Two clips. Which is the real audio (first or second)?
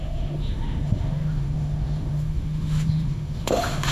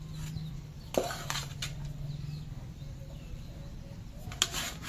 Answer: second